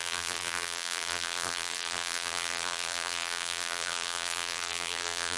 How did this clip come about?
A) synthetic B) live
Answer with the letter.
A